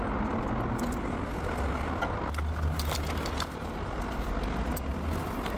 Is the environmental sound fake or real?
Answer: real